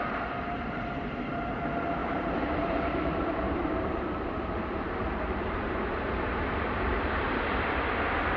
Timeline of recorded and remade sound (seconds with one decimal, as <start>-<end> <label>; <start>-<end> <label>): 0.0-2.0 recorded; 2.0-5.8 remade; 5.8-8.4 recorded